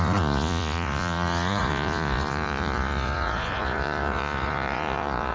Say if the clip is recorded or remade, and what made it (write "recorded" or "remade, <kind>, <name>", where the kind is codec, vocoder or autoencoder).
remade, vocoder, Vocos